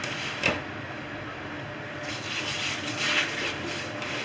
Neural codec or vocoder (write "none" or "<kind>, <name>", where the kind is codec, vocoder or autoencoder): none